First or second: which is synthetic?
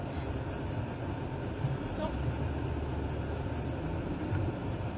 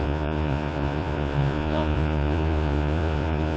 second